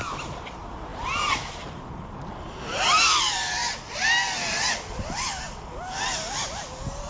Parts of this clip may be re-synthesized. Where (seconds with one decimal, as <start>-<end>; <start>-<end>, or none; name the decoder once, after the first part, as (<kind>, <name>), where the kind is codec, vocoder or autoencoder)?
none